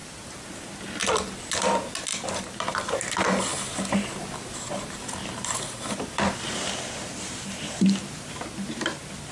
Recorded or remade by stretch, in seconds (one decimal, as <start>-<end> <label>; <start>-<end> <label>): 0.0-1.5 remade; 1.5-2.1 recorded; 2.1-2.9 remade; 2.9-3.5 recorded; 3.5-8.3 remade; 8.3-9.3 recorded